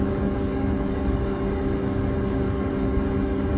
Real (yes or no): no